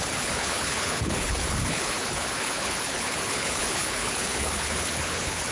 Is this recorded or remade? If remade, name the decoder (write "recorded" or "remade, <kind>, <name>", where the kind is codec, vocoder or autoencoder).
remade, codec, HILCodec